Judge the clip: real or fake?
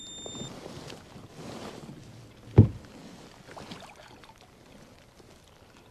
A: real